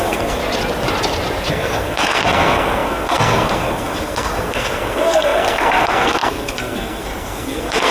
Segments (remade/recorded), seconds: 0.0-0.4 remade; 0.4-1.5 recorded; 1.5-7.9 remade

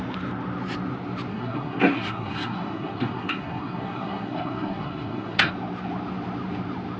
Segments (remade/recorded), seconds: 0.0-1.3 recorded; 1.3-5.5 remade; 5.5-7.0 recorded

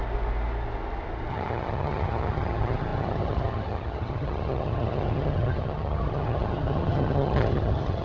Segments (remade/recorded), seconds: 0.0-1.3 recorded; 1.3-8.0 remade

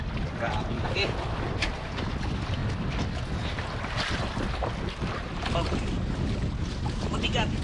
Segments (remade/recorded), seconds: 0.0-2.6 remade; 2.6-7.6 recorded